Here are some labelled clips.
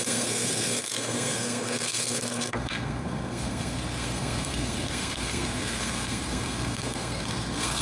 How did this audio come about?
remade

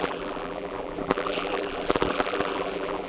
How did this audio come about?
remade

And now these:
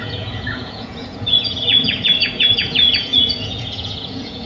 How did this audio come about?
remade